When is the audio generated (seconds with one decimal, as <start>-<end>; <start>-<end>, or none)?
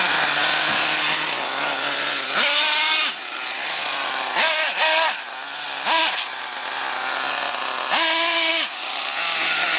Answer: none